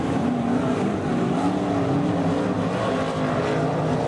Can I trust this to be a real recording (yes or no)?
yes